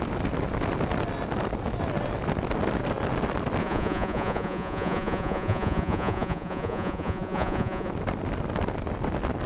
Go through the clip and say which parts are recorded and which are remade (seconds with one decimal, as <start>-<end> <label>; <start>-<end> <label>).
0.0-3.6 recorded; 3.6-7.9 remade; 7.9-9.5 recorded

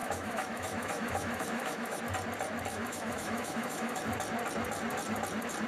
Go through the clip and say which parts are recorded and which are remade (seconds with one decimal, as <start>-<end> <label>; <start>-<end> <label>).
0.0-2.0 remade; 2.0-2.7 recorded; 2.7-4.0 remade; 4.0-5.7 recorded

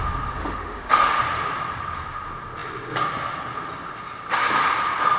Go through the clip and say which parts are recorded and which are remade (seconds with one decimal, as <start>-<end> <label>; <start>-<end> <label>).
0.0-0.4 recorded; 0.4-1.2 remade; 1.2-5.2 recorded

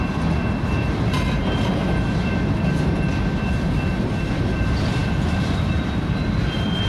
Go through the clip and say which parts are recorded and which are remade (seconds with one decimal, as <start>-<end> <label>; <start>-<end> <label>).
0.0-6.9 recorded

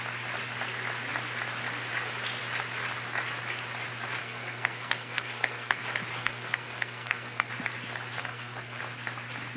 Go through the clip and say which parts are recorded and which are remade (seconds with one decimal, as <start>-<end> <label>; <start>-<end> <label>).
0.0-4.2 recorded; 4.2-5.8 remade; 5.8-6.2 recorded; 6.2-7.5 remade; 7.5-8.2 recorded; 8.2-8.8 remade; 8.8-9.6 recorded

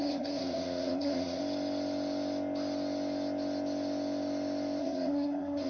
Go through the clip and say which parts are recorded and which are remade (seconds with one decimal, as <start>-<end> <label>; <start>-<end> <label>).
0.0-1.4 remade; 1.4-4.8 recorded; 4.8-5.7 remade

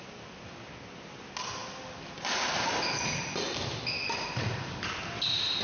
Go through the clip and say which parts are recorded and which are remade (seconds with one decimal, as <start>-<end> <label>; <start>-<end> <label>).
0.0-5.6 recorded